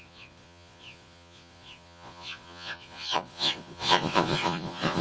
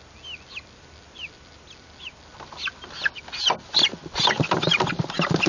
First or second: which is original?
second